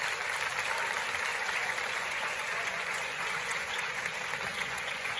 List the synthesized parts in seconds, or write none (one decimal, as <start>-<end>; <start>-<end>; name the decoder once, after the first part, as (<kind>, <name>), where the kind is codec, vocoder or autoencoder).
1.3-4.0 (vocoder, Vocos); 4.5-5.2